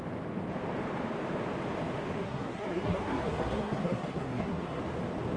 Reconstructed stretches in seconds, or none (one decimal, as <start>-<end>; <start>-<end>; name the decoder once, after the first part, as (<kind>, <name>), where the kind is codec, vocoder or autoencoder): 2.2-4.8 (codec, SNAC)